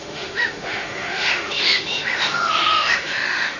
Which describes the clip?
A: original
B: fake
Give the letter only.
B